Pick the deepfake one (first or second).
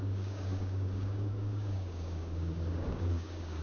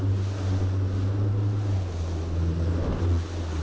first